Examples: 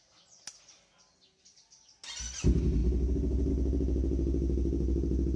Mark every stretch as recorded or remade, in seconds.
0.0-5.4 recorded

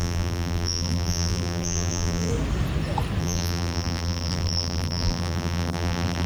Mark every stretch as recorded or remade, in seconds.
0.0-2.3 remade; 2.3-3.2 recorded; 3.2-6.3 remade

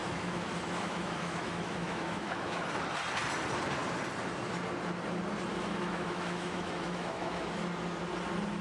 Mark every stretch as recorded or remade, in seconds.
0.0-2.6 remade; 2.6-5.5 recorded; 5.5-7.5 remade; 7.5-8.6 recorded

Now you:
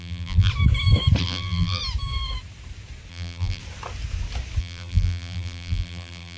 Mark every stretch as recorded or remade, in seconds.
0.0-0.5 remade; 0.5-1.2 recorded; 1.2-1.8 remade; 1.8-3.1 recorded; 3.1-3.6 remade; 3.6-4.6 recorded; 4.6-6.4 remade

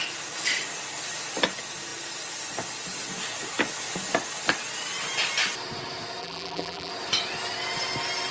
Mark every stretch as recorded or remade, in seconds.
0.0-6.2 recorded; 6.2-6.9 remade; 6.9-8.3 recorded

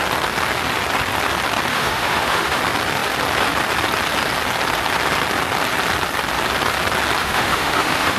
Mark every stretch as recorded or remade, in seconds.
0.0-1.7 recorded; 1.7-2.6 remade; 2.6-7.2 recorded; 7.2-8.2 remade

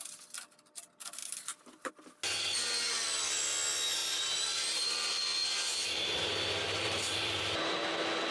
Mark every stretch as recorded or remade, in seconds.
0.0-4.0 recorded; 4.0-7.8 remade; 7.8-8.3 recorded

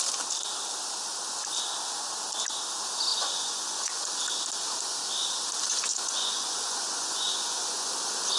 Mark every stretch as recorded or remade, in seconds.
0.0-3.1 recorded; 3.1-4.1 remade; 4.1-5.9 recorded; 5.9-7.9 remade; 7.9-8.4 recorded